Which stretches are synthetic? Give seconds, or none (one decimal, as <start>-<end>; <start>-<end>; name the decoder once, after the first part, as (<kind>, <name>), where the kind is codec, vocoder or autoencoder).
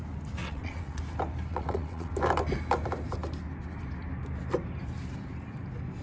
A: 0.4-1.0 (vocoder, WaveNeXt); 1.5-2.1